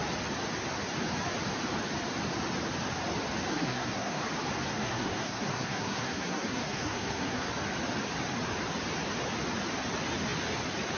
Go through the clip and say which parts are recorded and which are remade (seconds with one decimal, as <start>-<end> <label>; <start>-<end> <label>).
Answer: 0.0-3.5 recorded; 3.5-4.2 remade; 4.2-4.7 recorded; 4.7-7.5 remade; 7.5-11.0 recorded